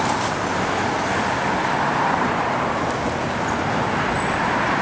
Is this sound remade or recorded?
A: recorded